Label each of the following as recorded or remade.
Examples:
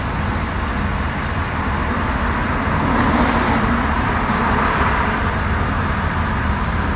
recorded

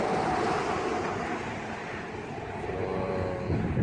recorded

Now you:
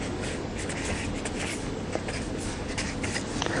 remade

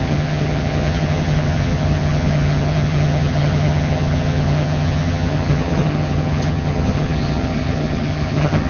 remade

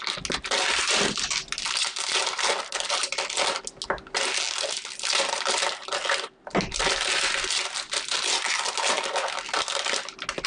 recorded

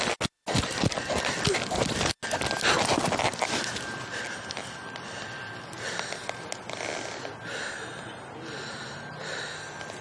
recorded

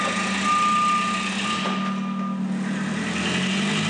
recorded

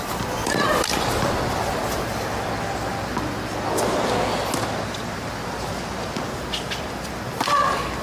recorded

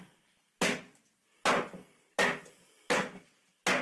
recorded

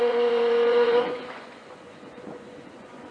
remade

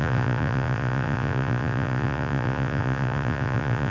remade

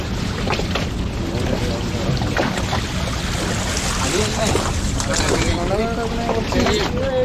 recorded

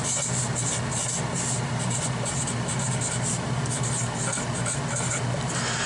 recorded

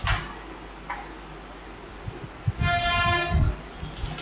recorded